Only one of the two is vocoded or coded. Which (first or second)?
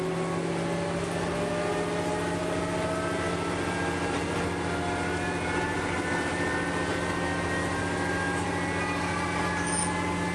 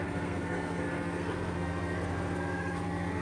second